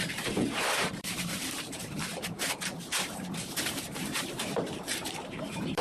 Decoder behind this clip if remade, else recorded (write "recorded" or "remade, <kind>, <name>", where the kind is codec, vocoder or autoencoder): remade, vocoder, BigVGAN v2